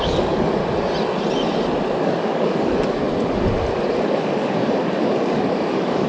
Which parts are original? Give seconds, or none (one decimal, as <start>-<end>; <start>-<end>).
0.6-2.0; 3.0-3.9